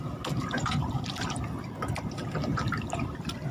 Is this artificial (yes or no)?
no